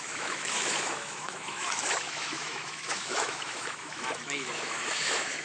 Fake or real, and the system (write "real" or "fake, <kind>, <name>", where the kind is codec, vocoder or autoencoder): fake, autoencoder, DAC-VAE